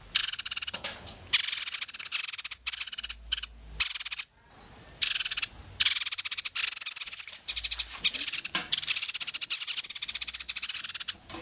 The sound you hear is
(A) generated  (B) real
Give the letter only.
B